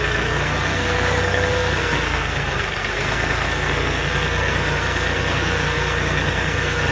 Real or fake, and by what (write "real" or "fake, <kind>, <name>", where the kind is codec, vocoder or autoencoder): fake, codec, SNAC